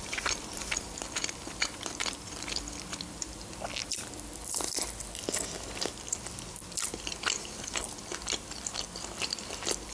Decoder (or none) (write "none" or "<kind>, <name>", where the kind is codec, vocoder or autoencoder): vocoder, BigVGAN v2